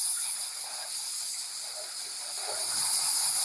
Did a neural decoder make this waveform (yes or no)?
no